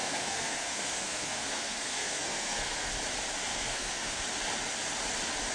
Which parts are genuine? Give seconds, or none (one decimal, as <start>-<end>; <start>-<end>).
2.9-3.5; 4.2-5.5